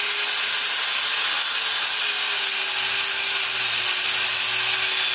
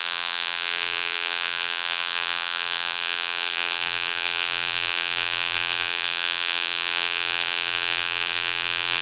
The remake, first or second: second